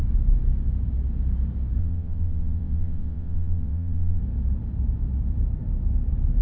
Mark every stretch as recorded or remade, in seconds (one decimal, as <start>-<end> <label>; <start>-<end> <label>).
0.0-1.8 recorded; 1.8-4.2 remade; 4.2-6.4 recorded